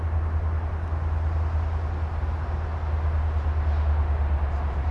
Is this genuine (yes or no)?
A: yes